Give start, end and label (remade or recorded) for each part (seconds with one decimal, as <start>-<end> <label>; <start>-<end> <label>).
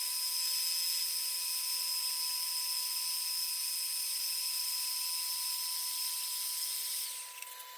0.0-7.8 recorded